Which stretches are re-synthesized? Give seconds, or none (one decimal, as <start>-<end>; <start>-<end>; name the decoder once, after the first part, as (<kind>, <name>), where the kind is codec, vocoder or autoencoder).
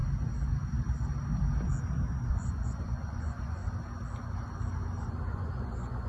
2.3-3.6 (vocoder, Vocos); 5.0-6.1